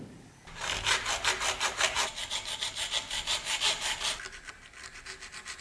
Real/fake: real